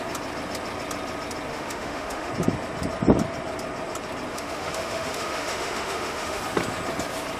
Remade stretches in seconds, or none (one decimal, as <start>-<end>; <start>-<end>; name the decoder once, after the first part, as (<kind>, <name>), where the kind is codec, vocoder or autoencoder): 1.5-2.3 (autoencoder, DAC-VAE); 4.3-6.4